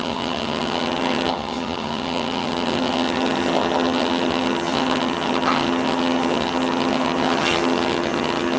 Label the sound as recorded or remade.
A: remade